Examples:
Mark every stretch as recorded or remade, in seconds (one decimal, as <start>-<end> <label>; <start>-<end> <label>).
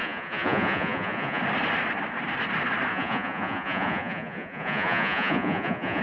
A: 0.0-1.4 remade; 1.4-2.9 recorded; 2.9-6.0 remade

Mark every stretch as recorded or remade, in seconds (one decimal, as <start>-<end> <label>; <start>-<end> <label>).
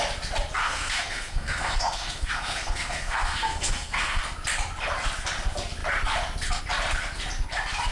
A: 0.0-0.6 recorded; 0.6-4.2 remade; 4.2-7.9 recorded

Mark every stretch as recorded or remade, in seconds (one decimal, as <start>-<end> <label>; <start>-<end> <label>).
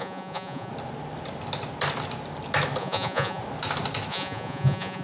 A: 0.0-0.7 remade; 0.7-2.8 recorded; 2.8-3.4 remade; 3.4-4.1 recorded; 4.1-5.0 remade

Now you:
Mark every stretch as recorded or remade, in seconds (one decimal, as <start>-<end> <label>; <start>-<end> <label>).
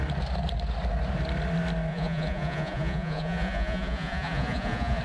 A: 0.0-1.9 recorded; 1.9-5.0 remade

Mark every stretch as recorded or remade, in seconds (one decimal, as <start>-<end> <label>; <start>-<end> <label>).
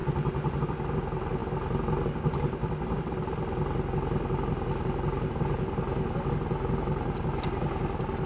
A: 0.0-8.3 recorded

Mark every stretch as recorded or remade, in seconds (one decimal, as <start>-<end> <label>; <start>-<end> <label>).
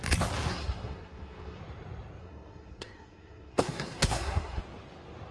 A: 0.0-0.5 recorded; 0.5-1.6 remade; 1.6-2.2 recorded; 2.2-4.6 remade; 4.6-5.3 recorded